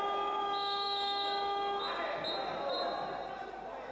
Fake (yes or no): no